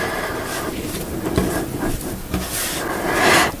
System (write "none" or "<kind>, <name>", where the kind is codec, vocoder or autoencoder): none